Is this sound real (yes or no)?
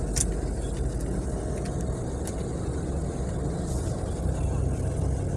yes